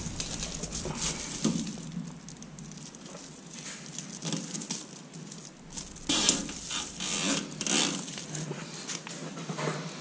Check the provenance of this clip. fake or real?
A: real